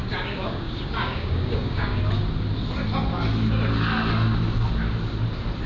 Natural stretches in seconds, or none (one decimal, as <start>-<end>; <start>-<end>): 2.0-5.7